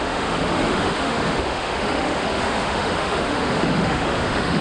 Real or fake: fake